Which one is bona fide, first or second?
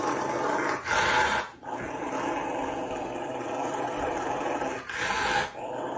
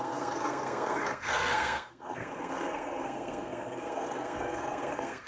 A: first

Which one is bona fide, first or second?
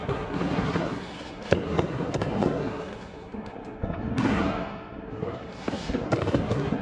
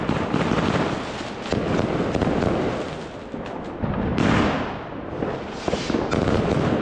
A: second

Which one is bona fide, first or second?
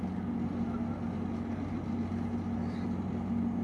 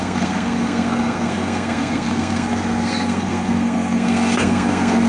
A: first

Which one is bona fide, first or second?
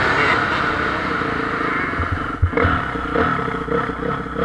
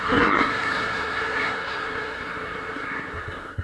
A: first